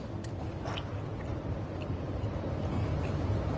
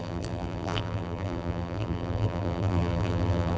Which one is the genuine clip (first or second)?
first